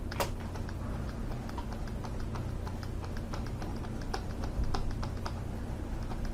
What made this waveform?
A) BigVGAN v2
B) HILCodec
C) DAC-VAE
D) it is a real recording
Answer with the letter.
D